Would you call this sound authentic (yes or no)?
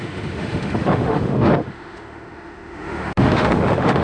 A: no